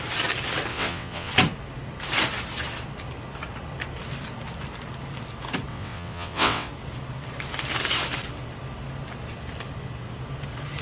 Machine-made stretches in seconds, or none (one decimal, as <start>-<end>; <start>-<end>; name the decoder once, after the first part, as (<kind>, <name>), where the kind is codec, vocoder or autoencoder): 0.7-1.3 (vocoder, WaveNeXt); 5.7-6.7